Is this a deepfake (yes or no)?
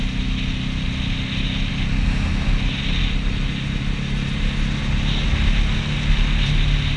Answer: no